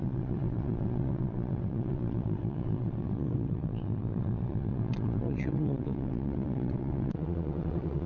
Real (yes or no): no